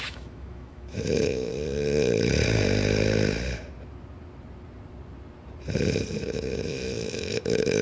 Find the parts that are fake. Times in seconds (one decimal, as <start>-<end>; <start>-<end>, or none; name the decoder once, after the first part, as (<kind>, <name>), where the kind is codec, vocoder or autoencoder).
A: 0.0-1.5 (autoencoder, DAC-VAE); 6.2-7.8